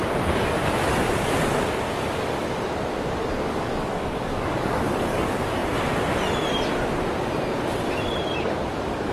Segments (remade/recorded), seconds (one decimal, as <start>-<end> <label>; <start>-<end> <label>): 0.0-3.4 recorded; 3.4-5.6 remade; 5.6-8.4 recorded; 8.4-9.1 remade